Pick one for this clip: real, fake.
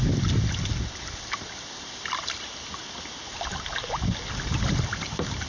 real